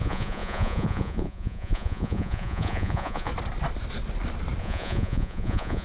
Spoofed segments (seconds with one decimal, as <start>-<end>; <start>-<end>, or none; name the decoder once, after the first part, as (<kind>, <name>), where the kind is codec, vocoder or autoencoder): 0.0-3.3 (vocoder, Vocos); 4.6-5.8